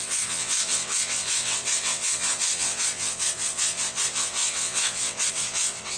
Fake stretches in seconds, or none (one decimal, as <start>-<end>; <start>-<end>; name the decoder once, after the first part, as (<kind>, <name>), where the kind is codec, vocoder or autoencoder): 0.0-6.0 (vocoder, WaveNeXt)

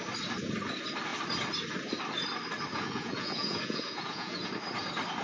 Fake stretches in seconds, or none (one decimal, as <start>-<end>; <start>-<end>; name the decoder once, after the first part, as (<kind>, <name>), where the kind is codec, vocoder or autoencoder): 2.7-4.5 (vocoder, Vocos)

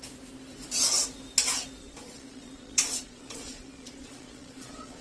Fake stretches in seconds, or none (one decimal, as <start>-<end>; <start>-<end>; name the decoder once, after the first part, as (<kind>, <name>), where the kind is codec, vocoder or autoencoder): 1.8-5.0 (vocoder, Vocos)

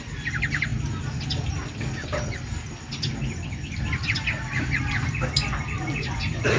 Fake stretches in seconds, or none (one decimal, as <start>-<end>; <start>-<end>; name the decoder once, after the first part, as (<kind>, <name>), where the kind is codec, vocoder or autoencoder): none

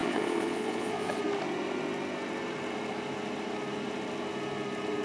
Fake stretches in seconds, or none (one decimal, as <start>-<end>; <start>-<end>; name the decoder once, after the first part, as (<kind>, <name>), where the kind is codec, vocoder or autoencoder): 0.0-1.2 (vocoder, Vocos)

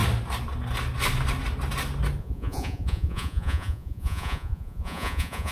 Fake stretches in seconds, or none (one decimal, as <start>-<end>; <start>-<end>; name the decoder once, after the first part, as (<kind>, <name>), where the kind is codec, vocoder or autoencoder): 2.2-5.5 (vocoder, Vocos)

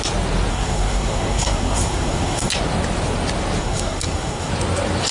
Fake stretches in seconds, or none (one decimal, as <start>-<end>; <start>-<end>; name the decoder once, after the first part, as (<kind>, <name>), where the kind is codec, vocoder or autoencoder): 0.5-2.5 (codec, SNAC); 3.6-4.5